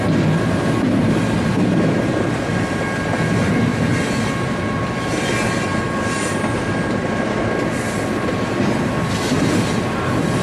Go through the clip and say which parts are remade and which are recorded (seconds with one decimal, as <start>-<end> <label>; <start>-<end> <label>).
0.0-10.4 recorded